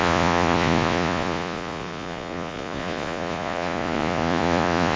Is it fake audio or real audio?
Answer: fake